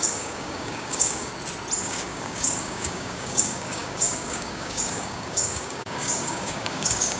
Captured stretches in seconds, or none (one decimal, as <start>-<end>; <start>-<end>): 1.3-1.8